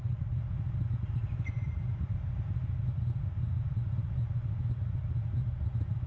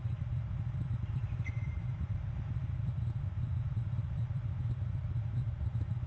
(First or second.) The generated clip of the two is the second